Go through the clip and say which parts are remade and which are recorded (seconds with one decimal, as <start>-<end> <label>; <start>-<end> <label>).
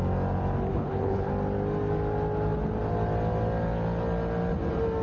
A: 0.0-0.7 recorded; 0.7-1.3 remade; 1.3-5.0 recorded